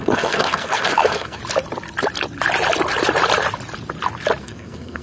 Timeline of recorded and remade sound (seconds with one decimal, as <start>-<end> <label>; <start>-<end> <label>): 0.0-1.4 remade; 1.4-4.4 recorded; 4.4-5.0 remade